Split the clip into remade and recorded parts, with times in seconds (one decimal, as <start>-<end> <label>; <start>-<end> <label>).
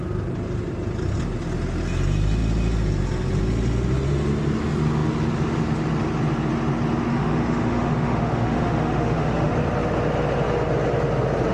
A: 0.0-7.1 recorded; 7.1-9.5 remade; 9.5-11.5 recorded